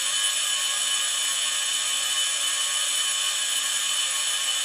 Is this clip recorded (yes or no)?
yes